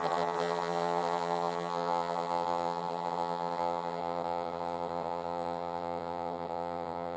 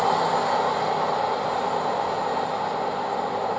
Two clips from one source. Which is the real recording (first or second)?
second